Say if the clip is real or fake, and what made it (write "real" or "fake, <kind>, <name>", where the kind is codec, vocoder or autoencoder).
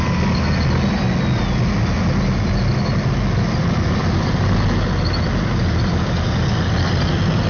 real